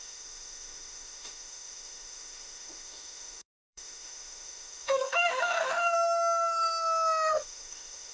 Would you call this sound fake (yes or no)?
yes